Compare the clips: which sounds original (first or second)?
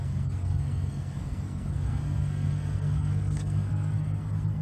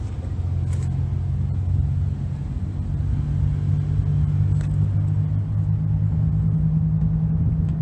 second